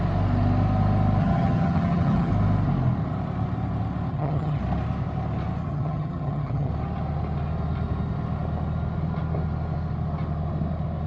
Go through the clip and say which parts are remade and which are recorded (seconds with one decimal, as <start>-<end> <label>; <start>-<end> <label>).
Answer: 0.0-1.2 recorded; 1.2-2.3 remade; 2.3-4.1 recorded; 4.1-4.6 remade; 4.6-5.6 recorded; 5.6-6.7 remade; 6.7-11.1 recorded